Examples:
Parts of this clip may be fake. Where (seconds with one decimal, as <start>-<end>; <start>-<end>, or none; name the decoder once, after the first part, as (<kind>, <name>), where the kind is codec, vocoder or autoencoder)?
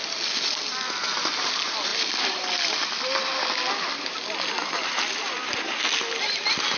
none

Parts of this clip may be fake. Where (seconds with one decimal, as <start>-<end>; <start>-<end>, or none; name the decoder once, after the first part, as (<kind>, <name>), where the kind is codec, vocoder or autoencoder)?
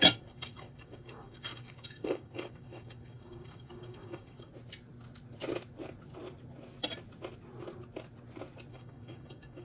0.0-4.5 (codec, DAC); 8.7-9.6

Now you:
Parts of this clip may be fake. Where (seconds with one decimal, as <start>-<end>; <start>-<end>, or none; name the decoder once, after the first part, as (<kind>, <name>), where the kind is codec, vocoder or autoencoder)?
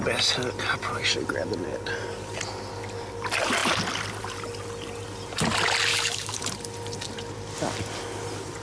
5.9-6.4 (codec, DAC)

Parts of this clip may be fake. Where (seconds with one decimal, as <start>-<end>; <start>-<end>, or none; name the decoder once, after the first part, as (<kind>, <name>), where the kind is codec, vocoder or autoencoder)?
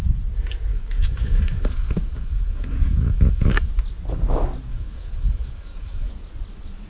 0.7-3.7 (codec, DAC); 4.7-6.1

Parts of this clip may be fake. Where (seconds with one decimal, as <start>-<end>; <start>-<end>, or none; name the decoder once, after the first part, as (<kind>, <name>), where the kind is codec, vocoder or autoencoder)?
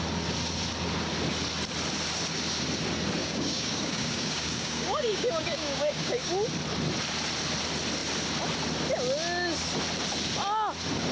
3.2-6.3 (codec, DAC)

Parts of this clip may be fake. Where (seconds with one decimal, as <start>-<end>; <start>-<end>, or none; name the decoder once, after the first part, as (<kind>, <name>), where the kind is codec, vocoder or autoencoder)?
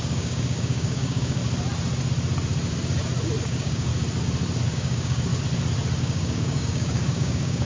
0.0-1.4 (codec, DAC); 3.4-3.9; 4.7-5.3; 6.0-7.6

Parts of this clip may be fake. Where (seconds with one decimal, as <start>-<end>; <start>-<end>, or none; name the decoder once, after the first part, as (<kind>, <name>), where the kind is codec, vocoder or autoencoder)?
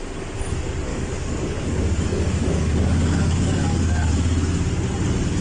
0.9-4.1 (codec, DAC)